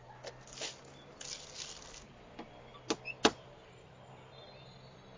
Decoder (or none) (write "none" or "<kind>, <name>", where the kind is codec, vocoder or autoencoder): none